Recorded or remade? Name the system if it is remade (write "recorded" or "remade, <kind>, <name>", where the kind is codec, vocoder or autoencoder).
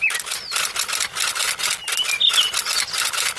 recorded